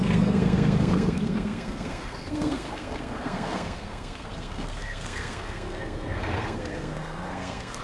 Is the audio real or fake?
fake